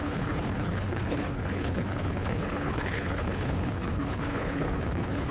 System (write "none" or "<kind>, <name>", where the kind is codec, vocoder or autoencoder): codec, HILCodec